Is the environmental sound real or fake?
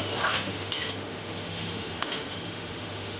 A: fake